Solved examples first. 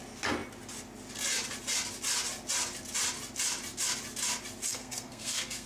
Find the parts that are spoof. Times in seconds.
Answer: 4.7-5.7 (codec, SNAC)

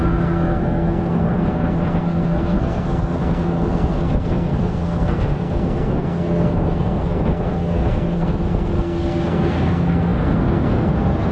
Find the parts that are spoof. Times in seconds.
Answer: 0.0-11.3 (codec, SNAC)

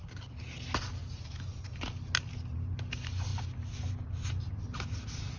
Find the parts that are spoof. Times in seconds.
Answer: none